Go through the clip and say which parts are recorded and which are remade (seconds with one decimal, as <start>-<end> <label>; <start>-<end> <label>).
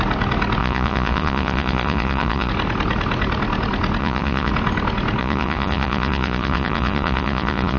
0.0-0.6 recorded; 0.6-2.5 remade; 2.5-4.0 recorded; 4.0-4.5 remade; 4.5-5.2 recorded; 5.2-7.8 remade